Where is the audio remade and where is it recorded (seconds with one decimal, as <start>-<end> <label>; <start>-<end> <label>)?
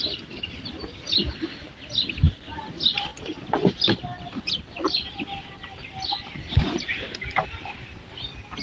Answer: 0.0-8.6 remade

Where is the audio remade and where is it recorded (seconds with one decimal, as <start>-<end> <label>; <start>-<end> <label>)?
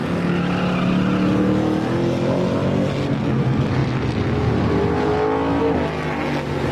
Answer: 0.0-6.7 recorded